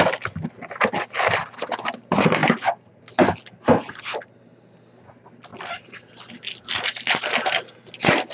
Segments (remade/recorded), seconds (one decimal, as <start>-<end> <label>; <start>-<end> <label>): 0.0-8.3 recorded